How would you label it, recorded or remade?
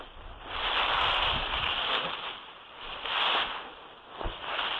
remade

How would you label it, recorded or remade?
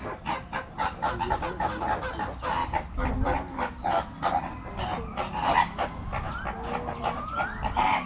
recorded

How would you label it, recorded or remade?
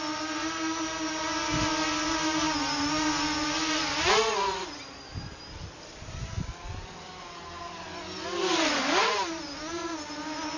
recorded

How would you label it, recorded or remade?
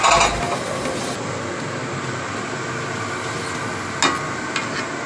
recorded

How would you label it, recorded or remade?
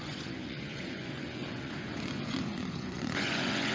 remade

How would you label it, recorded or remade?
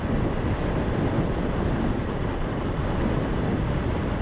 recorded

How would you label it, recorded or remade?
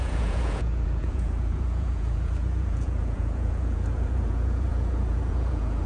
remade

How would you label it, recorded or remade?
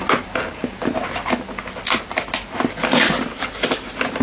recorded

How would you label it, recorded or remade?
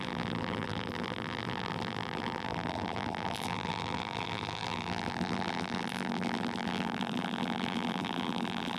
remade